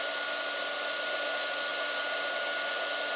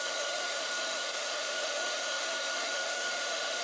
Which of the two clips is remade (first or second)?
second